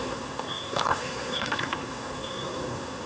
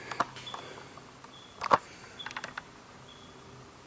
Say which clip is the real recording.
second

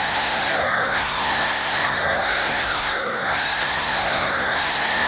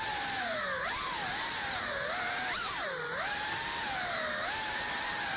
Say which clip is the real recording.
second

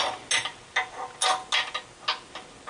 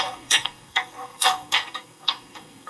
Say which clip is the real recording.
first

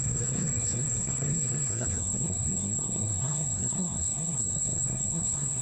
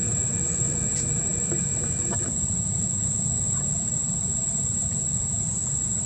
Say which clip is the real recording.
second